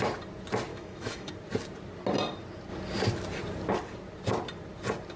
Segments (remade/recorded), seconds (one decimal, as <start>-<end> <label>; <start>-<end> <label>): 0.0-0.7 recorded; 0.7-1.3 remade; 1.3-5.2 recorded